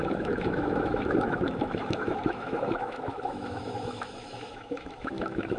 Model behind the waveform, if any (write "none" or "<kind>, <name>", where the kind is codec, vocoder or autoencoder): autoencoder, DAC-VAE